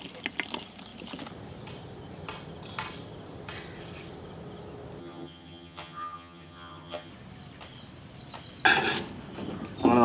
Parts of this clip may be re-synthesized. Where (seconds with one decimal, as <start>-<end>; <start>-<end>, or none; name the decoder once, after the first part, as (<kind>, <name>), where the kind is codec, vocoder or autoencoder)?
5.0-7.1 (vocoder, HiFi-GAN)